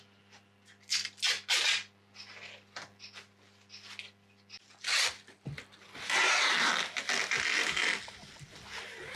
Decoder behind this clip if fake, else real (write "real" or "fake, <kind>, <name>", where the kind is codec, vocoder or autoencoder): real